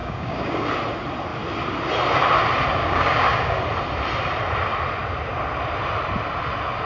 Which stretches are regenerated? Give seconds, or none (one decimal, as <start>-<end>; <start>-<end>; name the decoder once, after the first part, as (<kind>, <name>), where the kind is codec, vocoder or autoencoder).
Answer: 0.0-0.7 (codec, DAC); 2.8-3.6